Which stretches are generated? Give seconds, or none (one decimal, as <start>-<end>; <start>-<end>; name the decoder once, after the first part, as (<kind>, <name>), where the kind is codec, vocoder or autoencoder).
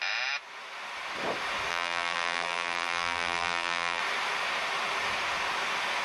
1.7-4.0 (vocoder, BigVGAN v2)